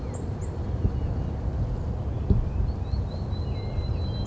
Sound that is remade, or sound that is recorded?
recorded